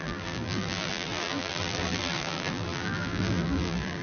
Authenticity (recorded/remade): remade